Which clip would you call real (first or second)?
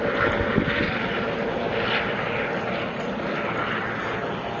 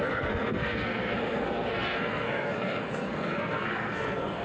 first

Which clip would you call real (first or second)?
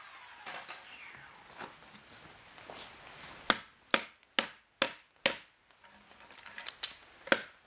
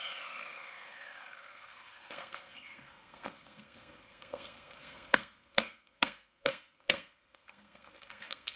first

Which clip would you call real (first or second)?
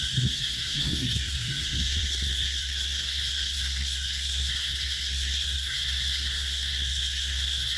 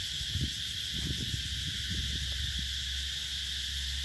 second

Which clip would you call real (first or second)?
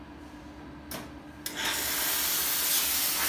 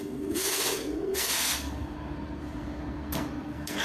first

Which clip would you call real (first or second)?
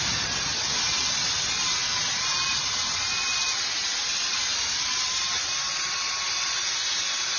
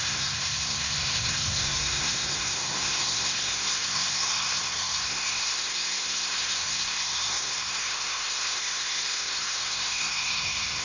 first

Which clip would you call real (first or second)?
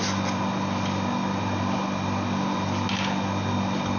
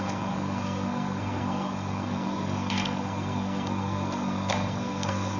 first